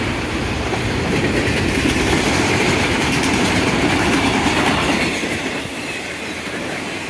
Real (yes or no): no